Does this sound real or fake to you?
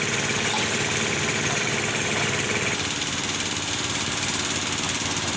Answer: real